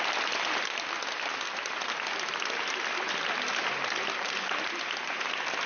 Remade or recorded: recorded